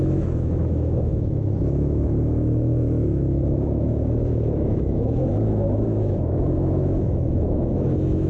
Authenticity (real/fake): fake